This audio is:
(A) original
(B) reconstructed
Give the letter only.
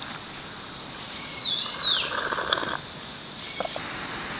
A